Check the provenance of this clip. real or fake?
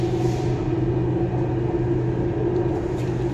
real